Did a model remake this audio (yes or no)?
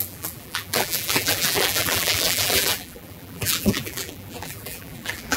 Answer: yes